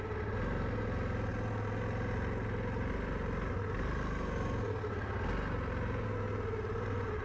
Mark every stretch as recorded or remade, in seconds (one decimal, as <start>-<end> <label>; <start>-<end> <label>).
0.0-7.2 recorded